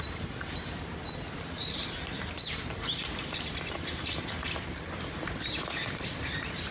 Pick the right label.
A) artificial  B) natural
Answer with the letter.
A